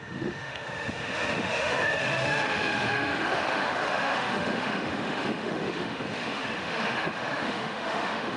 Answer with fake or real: fake